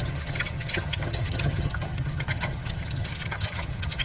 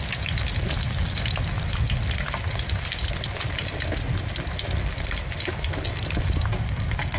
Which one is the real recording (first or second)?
second